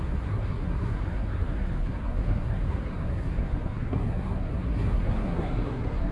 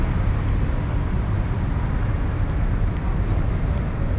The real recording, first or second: second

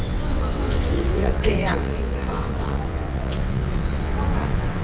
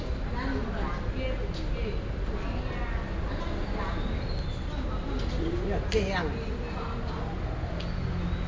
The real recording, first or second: second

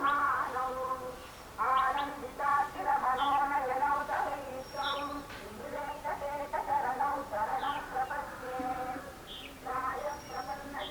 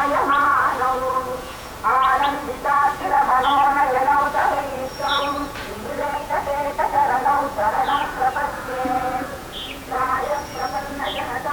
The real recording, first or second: first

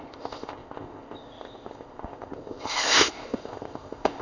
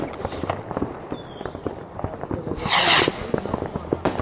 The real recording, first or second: second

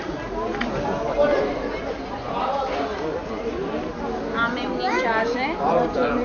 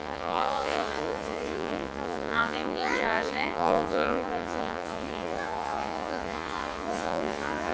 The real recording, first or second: first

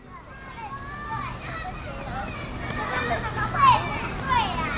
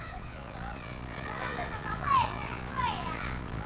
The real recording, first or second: first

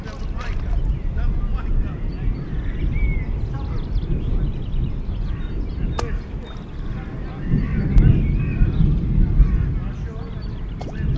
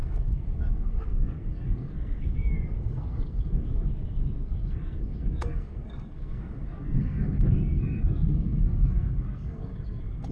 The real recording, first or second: first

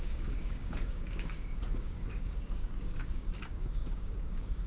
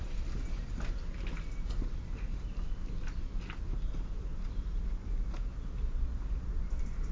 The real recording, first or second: second